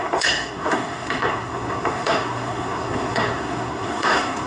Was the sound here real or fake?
fake